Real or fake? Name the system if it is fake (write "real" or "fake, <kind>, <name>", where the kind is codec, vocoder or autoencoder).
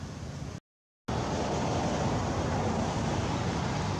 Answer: real